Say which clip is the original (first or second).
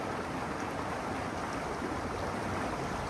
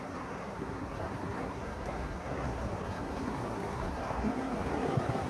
first